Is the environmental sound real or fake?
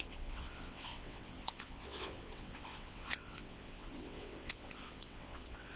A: fake